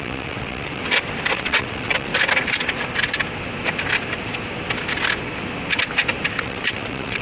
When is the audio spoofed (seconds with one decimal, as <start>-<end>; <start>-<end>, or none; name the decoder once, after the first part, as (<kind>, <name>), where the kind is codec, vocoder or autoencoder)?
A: 0.0-0.8 (vocoder, WaveNeXt); 1.3-2.1; 6.4-7.2